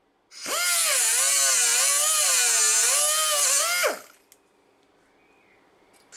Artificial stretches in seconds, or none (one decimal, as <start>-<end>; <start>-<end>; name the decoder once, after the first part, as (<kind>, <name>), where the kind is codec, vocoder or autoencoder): none